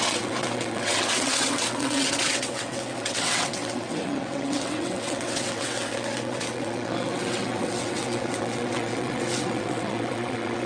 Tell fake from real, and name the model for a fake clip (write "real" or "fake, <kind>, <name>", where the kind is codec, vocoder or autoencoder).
fake, vocoder, WaveNeXt